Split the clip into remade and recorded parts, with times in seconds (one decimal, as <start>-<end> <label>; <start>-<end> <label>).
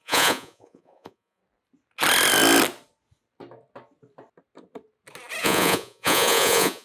0.0-1.4 remade; 1.4-5.4 recorded; 5.4-6.8 remade